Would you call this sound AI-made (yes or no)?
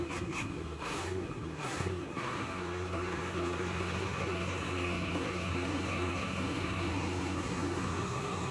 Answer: yes